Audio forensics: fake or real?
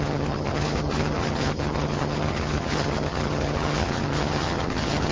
fake